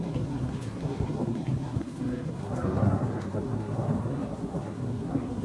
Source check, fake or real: fake